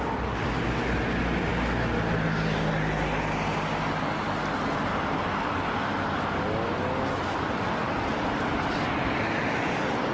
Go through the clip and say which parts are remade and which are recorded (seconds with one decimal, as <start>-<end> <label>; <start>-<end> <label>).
0.0-10.1 recorded